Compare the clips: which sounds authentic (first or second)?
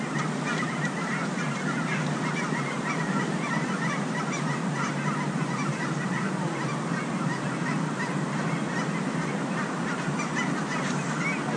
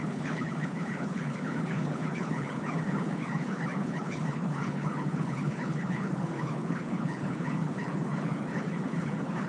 first